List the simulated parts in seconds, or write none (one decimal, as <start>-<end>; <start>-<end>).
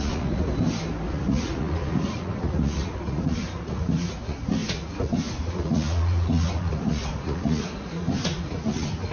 0.0-0.5; 1.1-9.1